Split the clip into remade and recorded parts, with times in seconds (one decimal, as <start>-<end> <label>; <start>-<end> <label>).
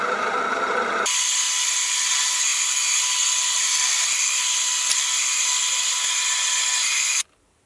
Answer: 0.0-7.7 recorded